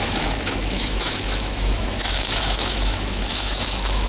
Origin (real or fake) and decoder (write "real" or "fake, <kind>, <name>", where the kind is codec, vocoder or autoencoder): fake, autoencoder, DAC-VAE